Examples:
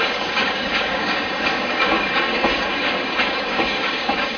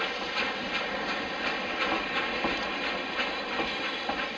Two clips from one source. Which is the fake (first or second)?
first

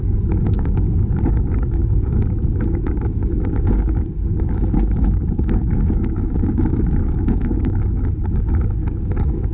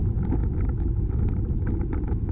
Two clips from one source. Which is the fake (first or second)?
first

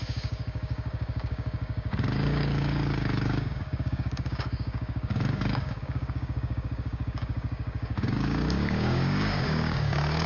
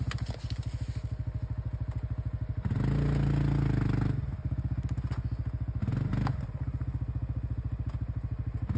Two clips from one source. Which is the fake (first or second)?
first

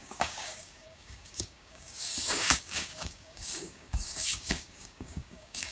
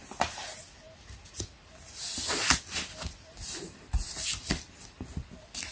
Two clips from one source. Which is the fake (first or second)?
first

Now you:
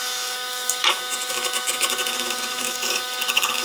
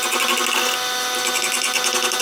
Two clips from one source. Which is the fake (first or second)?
first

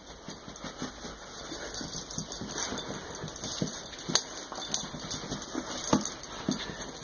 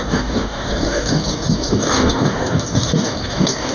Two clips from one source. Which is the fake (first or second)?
second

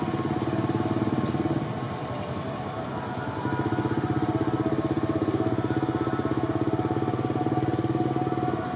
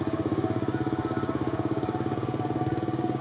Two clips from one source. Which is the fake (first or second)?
second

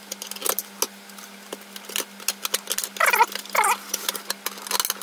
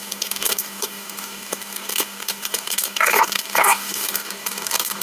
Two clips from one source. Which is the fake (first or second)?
second